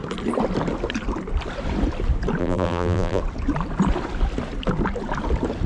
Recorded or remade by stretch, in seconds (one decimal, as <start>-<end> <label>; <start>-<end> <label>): 0.0-2.4 recorded; 2.4-3.2 remade; 3.2-5.7 recorded